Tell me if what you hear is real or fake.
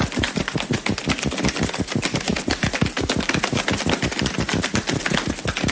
real